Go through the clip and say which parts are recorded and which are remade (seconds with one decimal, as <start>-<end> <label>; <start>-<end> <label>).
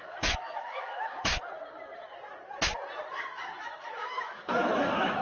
0.0-1.3 remade; 1.3-3.1 recorded; 3.1-5.2 remade